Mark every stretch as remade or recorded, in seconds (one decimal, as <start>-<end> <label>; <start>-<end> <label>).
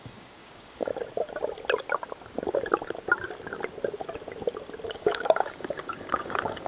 0.0-0.9 remade; 0.9-4.9 recorded; 4.9-6.7 remade